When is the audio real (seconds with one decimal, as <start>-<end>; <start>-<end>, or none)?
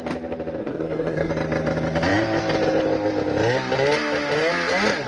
0.0-0.6; 1.3-5.1